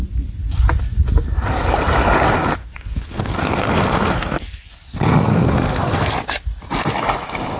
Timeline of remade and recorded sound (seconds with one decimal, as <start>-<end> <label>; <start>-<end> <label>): 0.0-2.6 recorded; 2.6-4.7 remade; 4.7-5.3 recorded; 5.3-6.1 remade; 6.1-7.6 recorded